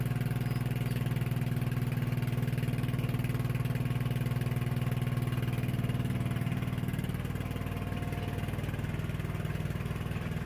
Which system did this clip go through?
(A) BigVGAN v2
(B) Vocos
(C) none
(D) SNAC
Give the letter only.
C